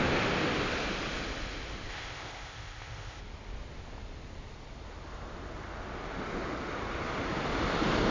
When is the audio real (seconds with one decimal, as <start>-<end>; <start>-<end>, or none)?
0.0-1.9; 3.2-8.1